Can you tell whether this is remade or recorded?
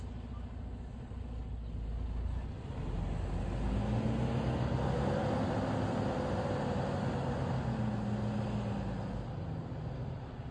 recorded